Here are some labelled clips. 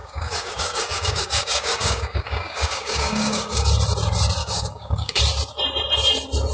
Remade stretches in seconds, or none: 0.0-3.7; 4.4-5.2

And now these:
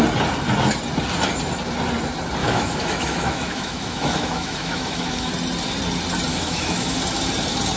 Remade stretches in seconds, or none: 2.4-5.3; 6.3-7.0

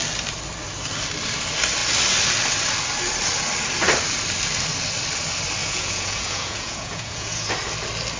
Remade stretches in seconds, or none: 5.6-7.5

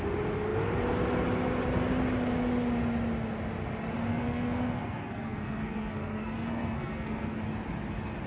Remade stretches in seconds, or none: 4.1-7.4

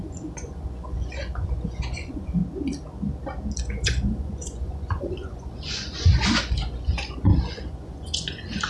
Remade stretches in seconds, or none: 0.0-2.4; 3.6-8.7